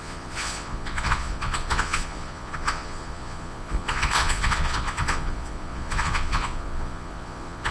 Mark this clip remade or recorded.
remade